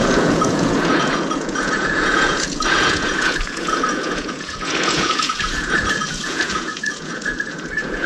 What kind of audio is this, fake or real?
fake